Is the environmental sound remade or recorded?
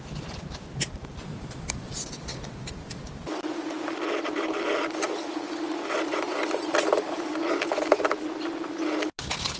recorded